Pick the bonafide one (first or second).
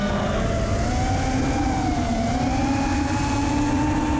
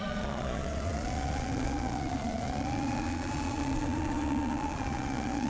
first